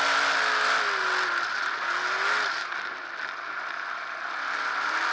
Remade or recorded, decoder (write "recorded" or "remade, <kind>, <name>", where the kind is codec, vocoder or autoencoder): recorded